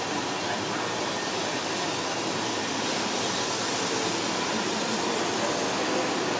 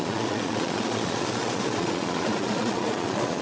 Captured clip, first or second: first